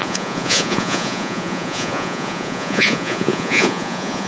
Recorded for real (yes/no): no